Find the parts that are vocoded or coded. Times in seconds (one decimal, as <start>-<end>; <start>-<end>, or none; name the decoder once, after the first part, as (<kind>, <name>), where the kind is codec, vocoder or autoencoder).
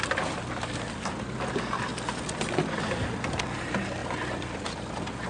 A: none